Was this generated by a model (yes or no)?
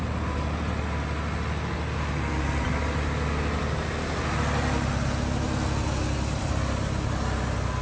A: no